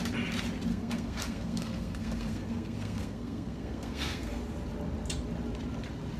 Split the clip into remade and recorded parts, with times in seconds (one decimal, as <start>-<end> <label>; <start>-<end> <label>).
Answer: 0.0-0.7 recorded; 0.7-4.4 remade; 4.4-6.2 recorded